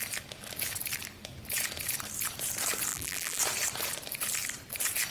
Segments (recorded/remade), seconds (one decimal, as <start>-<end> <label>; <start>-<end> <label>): 0.0-2.9 recorded; 2.9-3.4 remade; 3.4-5.1 recorded